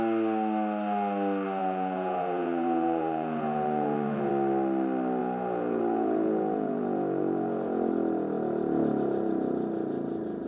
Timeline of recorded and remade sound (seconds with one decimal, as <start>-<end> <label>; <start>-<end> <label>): 0.0-1.6 recorded; 1.6-4.3 remade; 4.3-5.2 recorded; 5.2-7.9 remade; 7.9-10.5 recorded